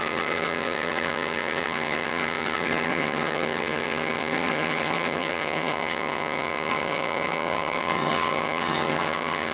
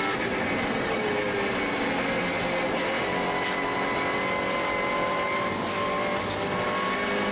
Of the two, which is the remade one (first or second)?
first